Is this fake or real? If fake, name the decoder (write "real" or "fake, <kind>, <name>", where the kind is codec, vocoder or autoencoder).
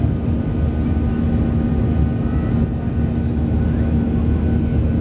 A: real